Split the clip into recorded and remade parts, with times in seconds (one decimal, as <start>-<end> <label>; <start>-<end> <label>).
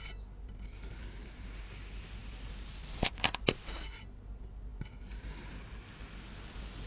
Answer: 0.0-6.9 recorded